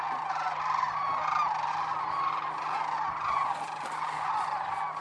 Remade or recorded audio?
recorded